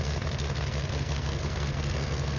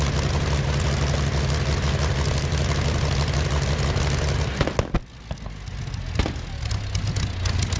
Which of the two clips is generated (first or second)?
first